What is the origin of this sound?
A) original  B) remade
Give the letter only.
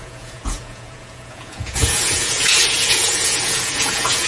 B